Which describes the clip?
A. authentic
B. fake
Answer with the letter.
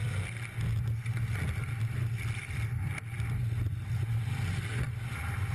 A